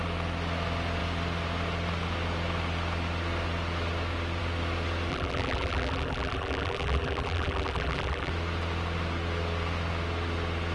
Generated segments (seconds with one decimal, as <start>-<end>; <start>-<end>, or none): 5.1-8.3